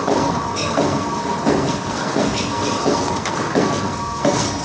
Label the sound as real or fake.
fake